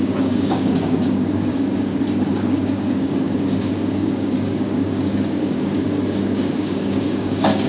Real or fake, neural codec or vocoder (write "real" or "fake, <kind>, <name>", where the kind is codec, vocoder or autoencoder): fake, codec, DAC